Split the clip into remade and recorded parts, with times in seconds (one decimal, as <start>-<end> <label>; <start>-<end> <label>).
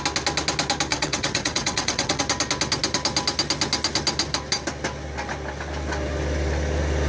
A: 0.0-0.9 recorded; 0.9-2.2 remade; 2.2-7.1 recorded